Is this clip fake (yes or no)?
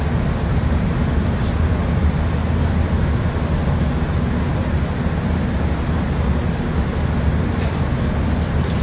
no